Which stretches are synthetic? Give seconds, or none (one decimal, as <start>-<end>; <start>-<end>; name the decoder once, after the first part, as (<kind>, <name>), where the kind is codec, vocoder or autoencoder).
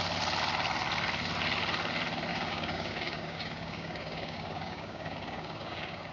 2.3-6.1 (codec, DAC)